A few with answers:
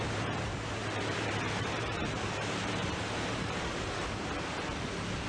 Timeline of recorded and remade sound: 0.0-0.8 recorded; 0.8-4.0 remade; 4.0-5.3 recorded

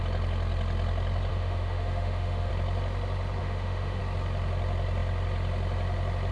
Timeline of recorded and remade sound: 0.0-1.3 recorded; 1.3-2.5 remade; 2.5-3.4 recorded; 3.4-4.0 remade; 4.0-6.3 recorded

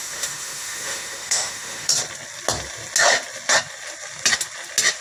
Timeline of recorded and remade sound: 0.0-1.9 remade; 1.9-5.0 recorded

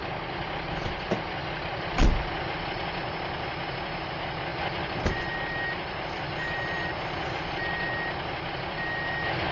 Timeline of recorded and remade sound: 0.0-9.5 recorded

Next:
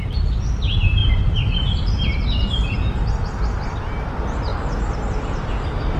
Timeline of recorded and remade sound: 0.0-1.0 recorded; 1.0-2.5 remade; 2.5-6.0 recorded

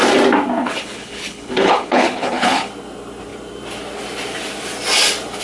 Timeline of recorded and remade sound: 0.0-0.6 recorded; 0.6-2.7 remade; 2.7-5.4 recorded

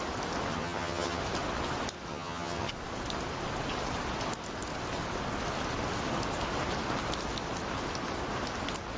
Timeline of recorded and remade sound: 0.0-0.5 recorded; 0.5-1.2 remade; 1.2-2.1 recorded; 2.1-2.7 remade; 2.7-9.0 recorded